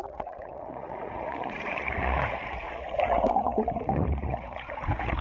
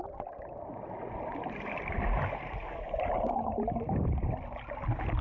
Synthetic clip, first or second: first